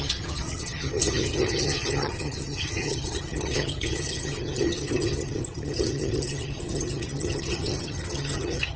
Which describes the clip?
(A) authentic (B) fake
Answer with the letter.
B